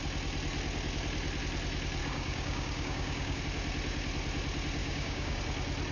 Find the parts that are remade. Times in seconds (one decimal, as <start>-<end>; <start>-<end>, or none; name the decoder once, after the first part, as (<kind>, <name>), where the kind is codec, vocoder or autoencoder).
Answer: 2.0-3.4 (codec, DAC); 4.8-5.4